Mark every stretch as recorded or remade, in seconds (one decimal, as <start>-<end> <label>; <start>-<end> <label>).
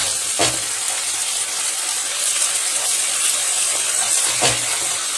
0.0-5.2 recorded